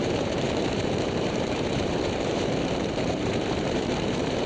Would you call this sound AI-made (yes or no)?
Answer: yes